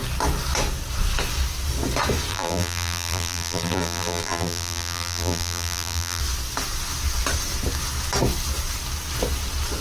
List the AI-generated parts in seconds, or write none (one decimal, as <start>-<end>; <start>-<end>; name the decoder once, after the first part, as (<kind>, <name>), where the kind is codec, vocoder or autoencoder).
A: 2.3-6.2 (vocoder, BigVGAN v2)